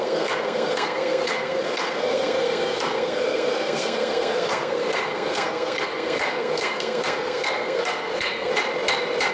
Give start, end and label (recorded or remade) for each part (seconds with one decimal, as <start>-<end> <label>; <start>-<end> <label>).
0.0-8.5 remade; 8.5-9.3 recorded